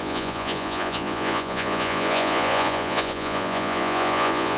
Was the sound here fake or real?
fake